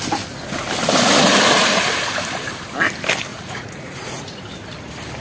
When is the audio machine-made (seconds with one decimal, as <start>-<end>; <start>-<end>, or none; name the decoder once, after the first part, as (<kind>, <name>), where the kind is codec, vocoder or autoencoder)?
3.3-4.5 (vocoder, Vocos)